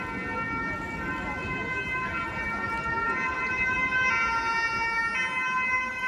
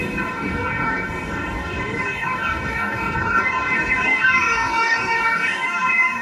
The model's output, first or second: second